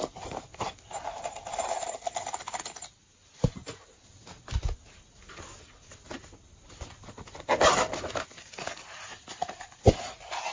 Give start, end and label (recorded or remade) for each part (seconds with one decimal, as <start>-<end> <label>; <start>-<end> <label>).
0.0-10.5 recorded